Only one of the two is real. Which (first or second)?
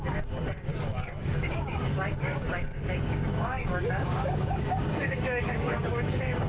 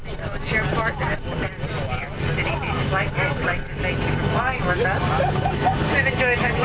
second